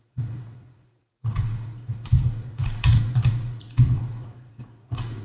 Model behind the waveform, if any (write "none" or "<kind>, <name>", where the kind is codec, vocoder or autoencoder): vocoder, Vocos